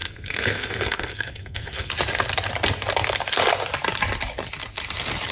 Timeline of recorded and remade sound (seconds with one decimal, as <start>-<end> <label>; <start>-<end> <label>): 0.0-1.9 remade; 1.9-5.3 recorded